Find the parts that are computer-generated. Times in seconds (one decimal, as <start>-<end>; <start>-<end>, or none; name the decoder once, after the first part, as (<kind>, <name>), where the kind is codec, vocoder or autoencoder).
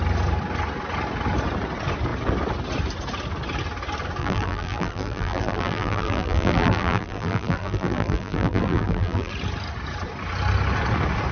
4.2-9.3 (vocoder, BigVGAN v2)